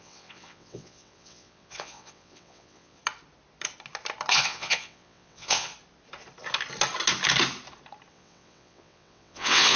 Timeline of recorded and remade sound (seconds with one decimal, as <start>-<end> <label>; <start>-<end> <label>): 0.0-3.0 remade; 3.0-4.3 recorded; 4.3-5.7 remade; 5.7-8.1 recorded; 8.1-9.8 remade